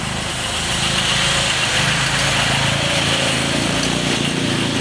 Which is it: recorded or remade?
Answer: recorded